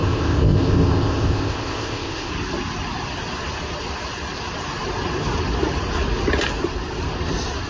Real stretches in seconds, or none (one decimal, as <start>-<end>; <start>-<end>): 2.3-7.7